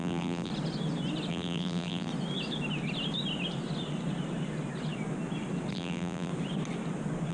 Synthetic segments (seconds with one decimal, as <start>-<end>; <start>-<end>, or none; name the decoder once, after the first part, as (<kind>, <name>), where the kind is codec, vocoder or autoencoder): 0.0-0.5 (vocoder, BigVGAN v2); 1.3-2.1; 5.7-6.3